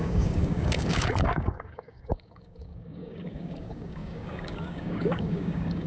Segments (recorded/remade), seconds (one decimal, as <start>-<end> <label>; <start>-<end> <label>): 0.0-5.9 remade